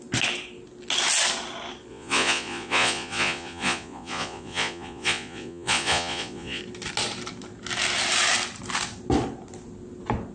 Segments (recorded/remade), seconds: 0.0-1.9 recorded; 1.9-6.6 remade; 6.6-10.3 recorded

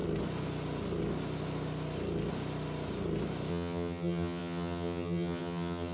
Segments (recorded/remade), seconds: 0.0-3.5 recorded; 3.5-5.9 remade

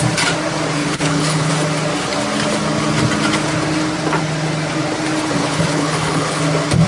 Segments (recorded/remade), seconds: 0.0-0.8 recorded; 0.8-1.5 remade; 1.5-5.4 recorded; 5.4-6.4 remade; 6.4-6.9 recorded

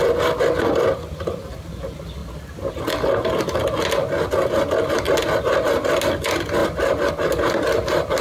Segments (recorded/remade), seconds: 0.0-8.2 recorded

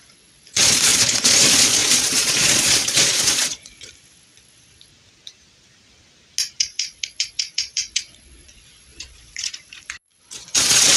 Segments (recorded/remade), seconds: 0.0-4.9 remade; 4.9-6.6 recorded; 6.6-11.0 remade